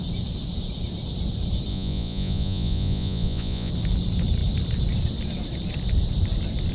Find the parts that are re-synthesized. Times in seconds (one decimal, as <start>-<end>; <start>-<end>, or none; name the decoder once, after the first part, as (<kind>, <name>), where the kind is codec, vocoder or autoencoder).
1.7-3.7 (vocoder, Vocos)